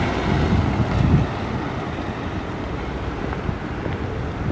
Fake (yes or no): no